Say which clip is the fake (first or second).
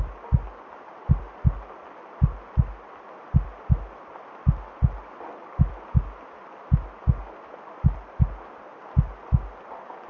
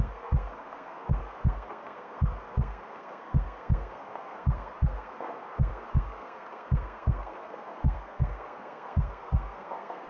second